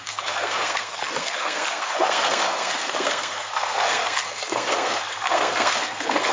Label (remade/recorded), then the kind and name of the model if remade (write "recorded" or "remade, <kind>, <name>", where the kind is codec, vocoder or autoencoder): remade, codec, SNAC